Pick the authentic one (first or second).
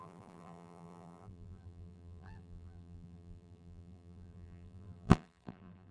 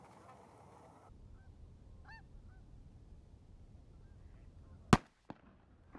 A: second